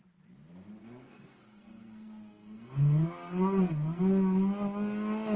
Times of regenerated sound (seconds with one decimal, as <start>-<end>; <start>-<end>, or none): 0.8-4.0